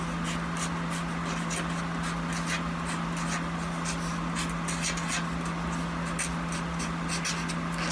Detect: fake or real real